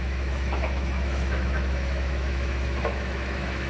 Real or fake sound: fake